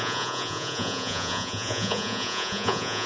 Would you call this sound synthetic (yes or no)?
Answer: yes